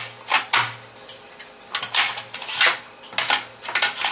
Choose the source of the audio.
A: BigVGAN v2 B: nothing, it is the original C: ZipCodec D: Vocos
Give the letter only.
B